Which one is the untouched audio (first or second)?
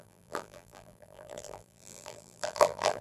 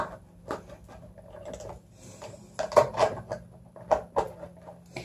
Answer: second